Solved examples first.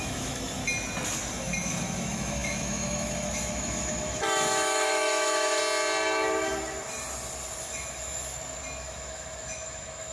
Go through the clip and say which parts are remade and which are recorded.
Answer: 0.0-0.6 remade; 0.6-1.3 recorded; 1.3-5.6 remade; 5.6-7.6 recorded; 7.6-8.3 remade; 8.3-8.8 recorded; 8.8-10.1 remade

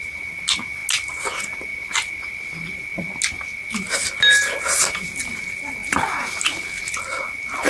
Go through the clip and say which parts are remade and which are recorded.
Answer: 0.0-7.7 recorded

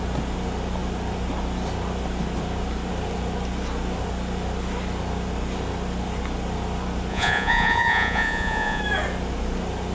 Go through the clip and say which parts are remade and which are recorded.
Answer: 0.0-7.1 recorded; 7.1-8.8 remade; 8.8-9.9 recorded

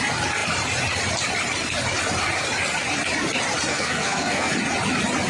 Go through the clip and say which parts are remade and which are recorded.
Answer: 0.0-3.7 recorded; 3.7-4.5 remade; 4.5-5.3 recorded